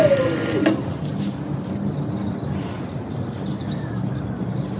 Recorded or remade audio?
recorded